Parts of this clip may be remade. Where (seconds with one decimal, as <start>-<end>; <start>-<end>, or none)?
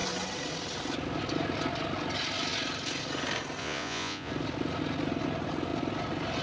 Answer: 3.6-4.3